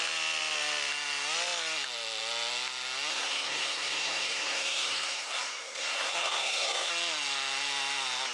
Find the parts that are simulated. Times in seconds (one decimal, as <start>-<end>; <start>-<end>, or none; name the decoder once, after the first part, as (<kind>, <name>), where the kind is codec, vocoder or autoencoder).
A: 3.1-6.9 (codec, SNAC)